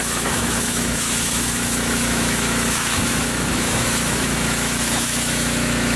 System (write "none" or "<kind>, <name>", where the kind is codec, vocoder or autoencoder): autoencoder, DAC-VAE